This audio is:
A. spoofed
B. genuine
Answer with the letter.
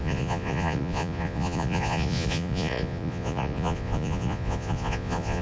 A